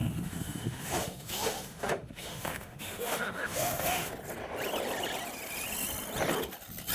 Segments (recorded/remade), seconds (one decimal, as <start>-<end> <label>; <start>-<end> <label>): 0.0-4.1 remade; 4.1-6.9 recorded